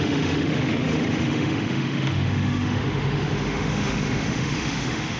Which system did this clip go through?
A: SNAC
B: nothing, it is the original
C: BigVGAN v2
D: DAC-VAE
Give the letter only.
D